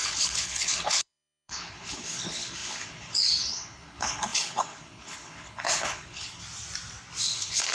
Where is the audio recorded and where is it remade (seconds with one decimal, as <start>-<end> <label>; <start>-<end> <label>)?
0.0-6.4 remade; 6.4-7.2 recorded; 7.2-7.7 remade